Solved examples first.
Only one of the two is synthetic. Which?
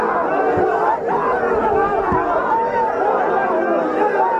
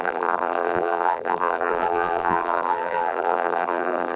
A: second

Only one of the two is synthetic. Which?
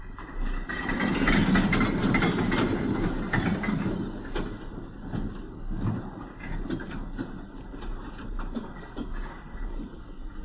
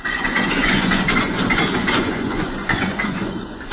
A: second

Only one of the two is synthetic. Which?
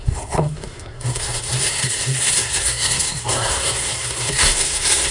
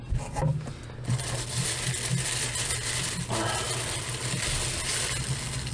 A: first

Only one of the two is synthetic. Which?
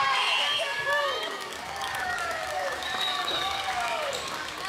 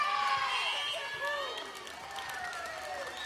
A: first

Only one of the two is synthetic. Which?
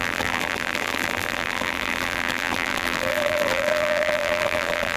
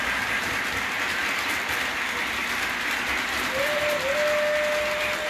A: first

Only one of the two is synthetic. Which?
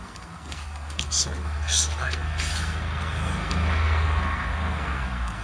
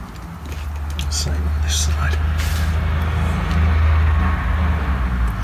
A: first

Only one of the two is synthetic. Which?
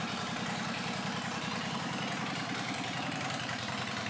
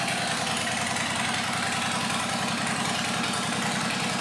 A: first